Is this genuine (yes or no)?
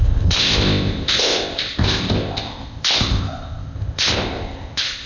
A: no